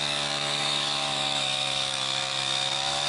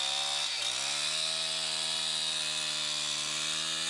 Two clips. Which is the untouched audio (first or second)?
second